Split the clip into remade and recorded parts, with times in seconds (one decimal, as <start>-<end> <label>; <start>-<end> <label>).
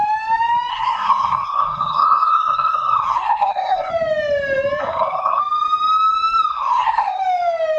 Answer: 0.0-0.7 recorded; 0.7-3.9 remade; 3.9-4.8 recorded; 4.8-5.4 remade; 5.4-6.5 recorded; 6.5-7.2 remade; 7.2-7.8 recorded